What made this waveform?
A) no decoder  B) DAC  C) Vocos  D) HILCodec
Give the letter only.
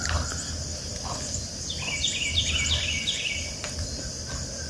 A